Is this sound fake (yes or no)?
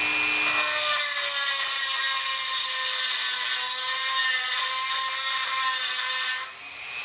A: no